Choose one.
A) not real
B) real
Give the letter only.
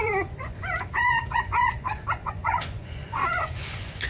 A